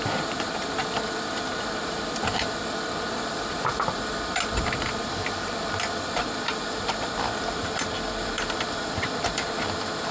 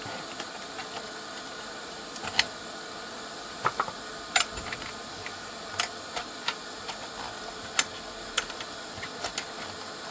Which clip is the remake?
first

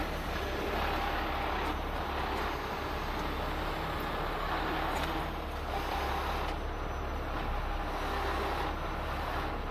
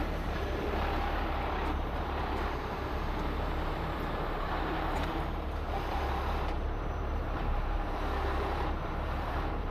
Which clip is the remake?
second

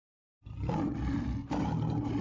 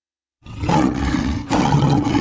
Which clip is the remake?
second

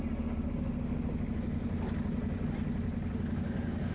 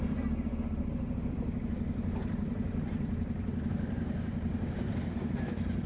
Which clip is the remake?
second